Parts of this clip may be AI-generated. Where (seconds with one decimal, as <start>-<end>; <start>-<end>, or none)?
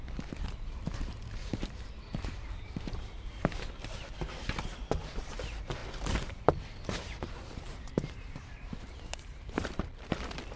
0.0-10.6